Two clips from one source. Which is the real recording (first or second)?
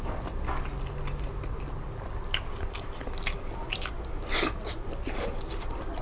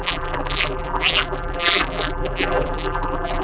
first